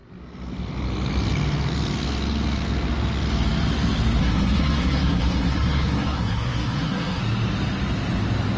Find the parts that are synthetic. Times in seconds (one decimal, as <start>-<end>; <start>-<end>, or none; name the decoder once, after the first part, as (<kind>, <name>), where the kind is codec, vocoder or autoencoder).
4.2-7.2 (codec, SNAC)